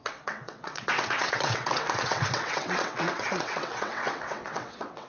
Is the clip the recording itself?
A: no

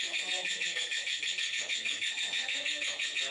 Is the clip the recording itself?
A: no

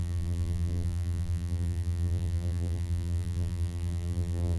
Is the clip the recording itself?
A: no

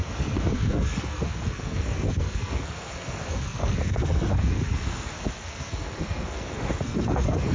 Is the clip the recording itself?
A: no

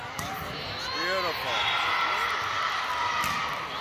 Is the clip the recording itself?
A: yes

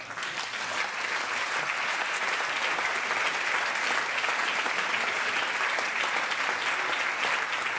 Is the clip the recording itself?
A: no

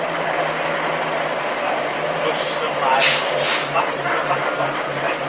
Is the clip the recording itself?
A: yes